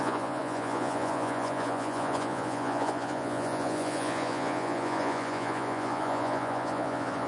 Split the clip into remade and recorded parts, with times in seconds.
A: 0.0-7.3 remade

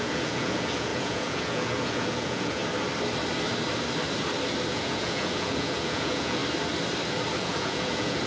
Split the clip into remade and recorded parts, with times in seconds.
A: 0.0-2.6 remade; 2.6-4.7 recorded; 4.7-6.4 remade; 6.4-7.4 recorded; 7.4-8.3 remade

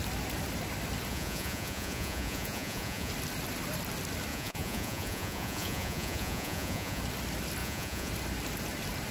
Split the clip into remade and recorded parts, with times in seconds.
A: 0.0-1.1 recorded; 1.1-3.1 remade; 3.1-4.3 recorded; 4.3-7.0 remade; 7.0-7.6 recorded; 7.6-8.1 remade; 8.1-9.1 recorded

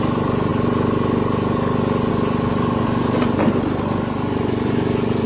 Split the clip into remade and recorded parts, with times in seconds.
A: 0.0-5.3 recorded